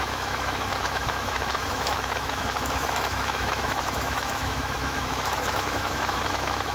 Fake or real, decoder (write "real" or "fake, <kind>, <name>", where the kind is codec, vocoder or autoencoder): fake, autoencoder, DAC-VAE